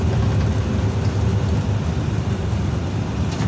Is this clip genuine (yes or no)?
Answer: yes